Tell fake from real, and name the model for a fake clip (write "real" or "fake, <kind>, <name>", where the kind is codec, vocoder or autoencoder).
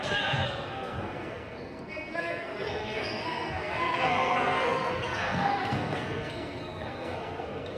fake, codec, SNAC